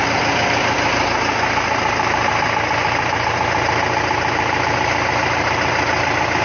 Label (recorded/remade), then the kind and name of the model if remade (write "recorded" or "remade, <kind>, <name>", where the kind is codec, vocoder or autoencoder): recorded